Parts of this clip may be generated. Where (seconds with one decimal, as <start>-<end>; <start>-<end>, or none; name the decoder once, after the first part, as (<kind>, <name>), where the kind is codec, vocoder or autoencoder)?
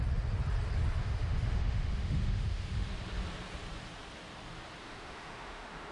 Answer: 1.0-2.9 (autoencoder, DAC-VAE); 4.8-5.9